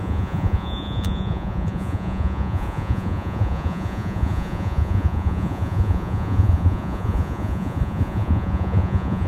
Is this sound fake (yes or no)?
yes